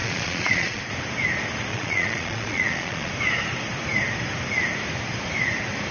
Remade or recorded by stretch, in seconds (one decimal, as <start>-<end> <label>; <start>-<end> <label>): 0.0-0.8 remade; 0.8-1.7 recorded; 1.7-3.1 remade; 3.1-5.9 recorded